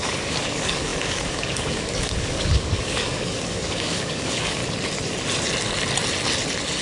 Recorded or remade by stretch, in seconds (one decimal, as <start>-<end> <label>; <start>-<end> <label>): 0.0-4.6 remade; 4.6-6.8 recorded